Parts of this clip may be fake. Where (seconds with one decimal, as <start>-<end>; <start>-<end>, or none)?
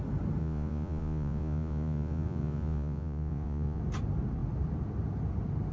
0.4-3.8